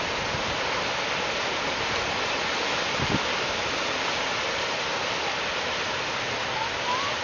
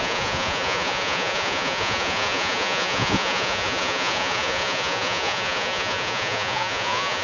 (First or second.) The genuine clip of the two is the first